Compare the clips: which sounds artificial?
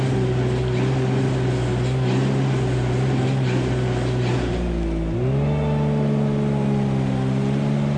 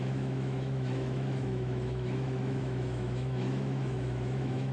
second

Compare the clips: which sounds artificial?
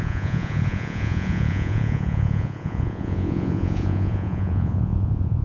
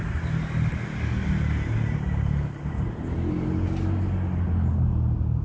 first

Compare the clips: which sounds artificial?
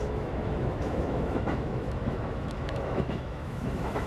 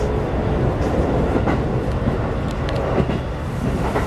first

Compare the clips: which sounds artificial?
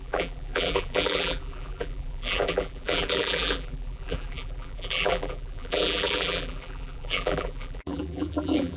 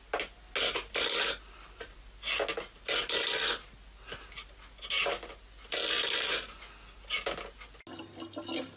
first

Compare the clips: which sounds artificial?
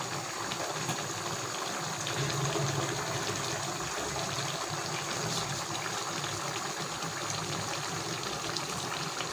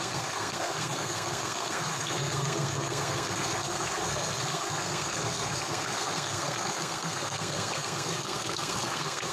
second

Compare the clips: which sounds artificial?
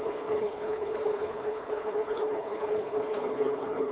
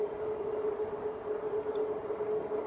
first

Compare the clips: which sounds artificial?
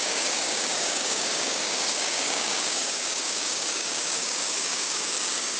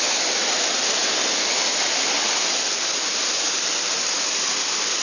first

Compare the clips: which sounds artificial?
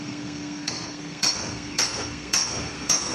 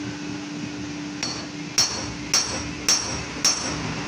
first